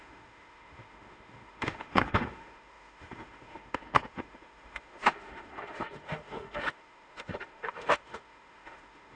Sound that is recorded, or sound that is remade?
remade